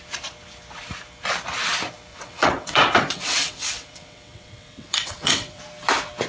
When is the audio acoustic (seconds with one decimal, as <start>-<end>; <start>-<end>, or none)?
0.0-2.1; 5.6-6.3